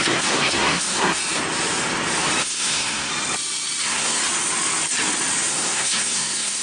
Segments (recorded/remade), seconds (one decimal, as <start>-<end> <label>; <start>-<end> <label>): 0.0-1.2 remade; 1.2-2.4 recorded; 2.4-3.1 remade; 3.1-3.8 recorded; 3.8-4.2 remade; 4.2-5.5 recorded; 5.5-6.6 remade